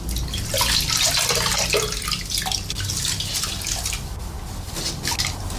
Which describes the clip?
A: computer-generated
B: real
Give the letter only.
B